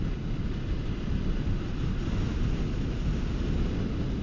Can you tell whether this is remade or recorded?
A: recorded